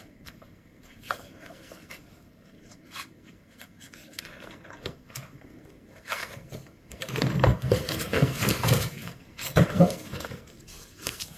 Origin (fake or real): fake